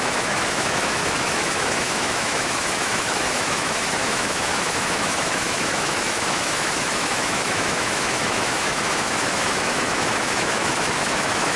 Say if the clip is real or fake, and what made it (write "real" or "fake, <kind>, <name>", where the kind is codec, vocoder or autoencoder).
fake, autoencoder, DAC-VAE